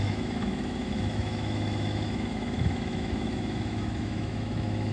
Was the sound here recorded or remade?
remade